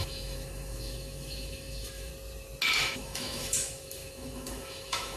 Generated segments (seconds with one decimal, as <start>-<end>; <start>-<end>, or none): 0.0-2.1; 2.8-5.2